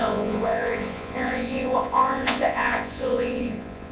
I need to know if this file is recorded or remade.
remade